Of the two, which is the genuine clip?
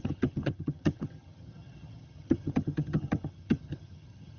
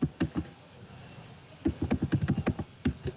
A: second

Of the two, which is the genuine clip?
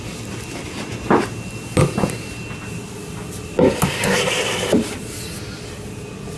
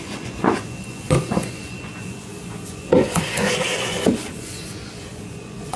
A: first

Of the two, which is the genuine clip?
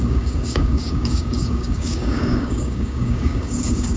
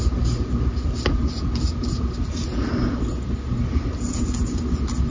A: second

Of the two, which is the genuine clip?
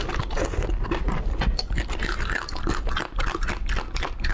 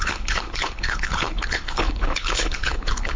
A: first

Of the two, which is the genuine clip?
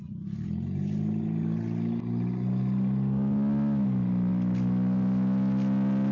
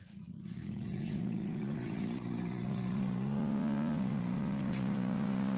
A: first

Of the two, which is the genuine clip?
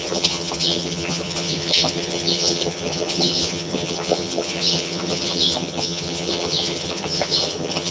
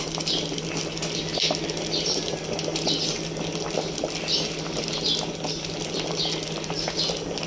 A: second